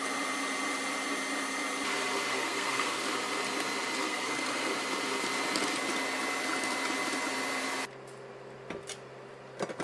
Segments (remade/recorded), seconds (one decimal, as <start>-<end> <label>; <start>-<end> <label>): 0.0-2.3 recorded; 2.3-3.0 remade; 3.0-4.0 recorded; 4.0-4.7 remade; 4.7-9.8 recorded